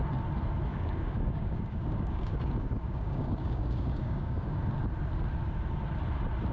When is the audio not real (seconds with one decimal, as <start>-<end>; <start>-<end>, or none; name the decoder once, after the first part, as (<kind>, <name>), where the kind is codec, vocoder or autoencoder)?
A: 0.7-4.6 (codec, DAC)

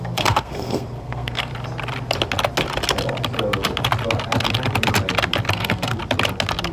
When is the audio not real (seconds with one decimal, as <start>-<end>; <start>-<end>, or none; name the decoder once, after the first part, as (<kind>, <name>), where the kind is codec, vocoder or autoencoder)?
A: 0.0-1.5 (codec, SNAC); 5.5-6.0

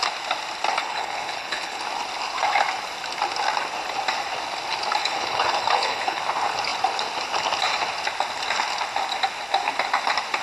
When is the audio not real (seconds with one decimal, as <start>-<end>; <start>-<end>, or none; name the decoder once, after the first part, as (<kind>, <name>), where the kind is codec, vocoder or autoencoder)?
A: 0.8-1.8 (codec, HILCodec); 5.0-6.2

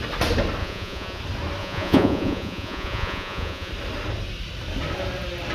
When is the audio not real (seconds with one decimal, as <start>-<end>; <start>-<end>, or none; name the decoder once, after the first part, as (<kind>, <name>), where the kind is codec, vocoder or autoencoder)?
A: 0.6-1.2 (vocoder, Vocos); 1.6-3.7

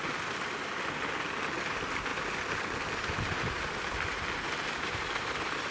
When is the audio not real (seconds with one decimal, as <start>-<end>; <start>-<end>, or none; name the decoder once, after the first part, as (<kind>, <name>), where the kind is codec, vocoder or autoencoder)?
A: none

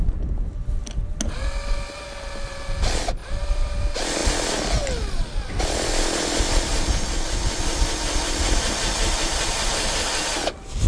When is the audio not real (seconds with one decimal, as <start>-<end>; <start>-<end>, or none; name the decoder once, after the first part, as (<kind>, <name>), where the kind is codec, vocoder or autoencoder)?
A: 3.2-3.8 (vocoder, BigVGAN v2); 6.7-9.8

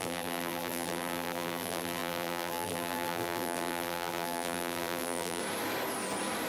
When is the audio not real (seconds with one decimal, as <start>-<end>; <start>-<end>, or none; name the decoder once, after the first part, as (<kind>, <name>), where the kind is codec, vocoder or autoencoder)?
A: 0.0-5.4 (vocoder, BigVGAN v2)

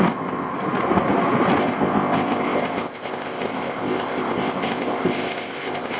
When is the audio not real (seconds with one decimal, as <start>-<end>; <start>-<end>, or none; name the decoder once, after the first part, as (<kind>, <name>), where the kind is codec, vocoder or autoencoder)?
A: 0.0-0.5 (codec, ZipCodec); 1.6-6.0